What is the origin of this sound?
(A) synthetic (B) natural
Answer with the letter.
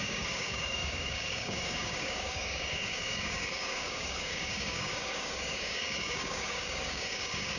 A